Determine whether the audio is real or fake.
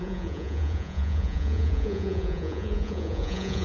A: fake